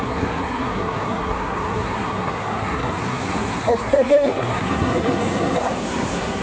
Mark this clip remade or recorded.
remade